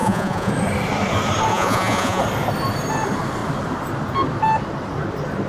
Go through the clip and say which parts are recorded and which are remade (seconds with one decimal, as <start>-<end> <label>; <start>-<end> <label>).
0.0-0.5 remade; 0.5-1.5 recorded; 1.5-2.2 remade; 2.2-5.5 recorded